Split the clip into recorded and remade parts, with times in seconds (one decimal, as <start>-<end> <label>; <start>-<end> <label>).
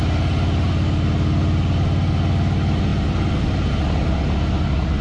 0.0-5.0 recorded